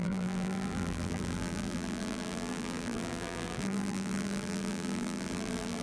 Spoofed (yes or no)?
yes